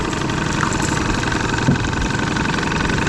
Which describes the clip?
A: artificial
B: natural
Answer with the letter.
B